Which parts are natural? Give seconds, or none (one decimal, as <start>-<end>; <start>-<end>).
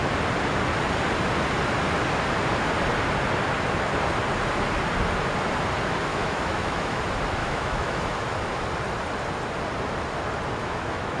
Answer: 0.0-6.1; 7.0-7.4; 8.2-10.6